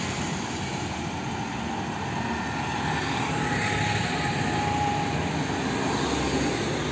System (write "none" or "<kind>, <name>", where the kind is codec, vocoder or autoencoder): none